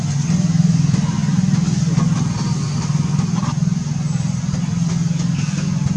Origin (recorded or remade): recorded